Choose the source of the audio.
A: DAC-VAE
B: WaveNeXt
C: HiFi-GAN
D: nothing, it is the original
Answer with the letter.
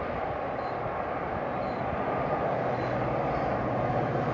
D